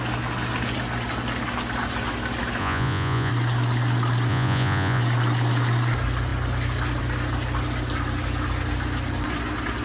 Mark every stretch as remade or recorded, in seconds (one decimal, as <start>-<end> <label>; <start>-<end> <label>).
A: 0.0-2.6 recorded; 2.6-3.3 remade; 3.3-4.3 recorded; 4.3-5.0 remade; 5.0-9.8 recorded